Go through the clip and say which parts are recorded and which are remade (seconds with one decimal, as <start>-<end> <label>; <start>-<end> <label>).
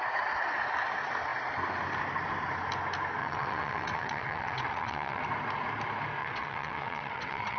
0.0-3.2 recorded; 3.2-5.2 remade; 5.2-6.2 recorded; 6.2-7.6 remade